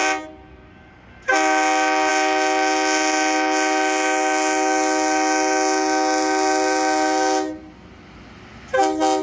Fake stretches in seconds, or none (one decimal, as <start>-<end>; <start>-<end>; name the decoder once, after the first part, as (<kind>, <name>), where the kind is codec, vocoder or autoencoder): none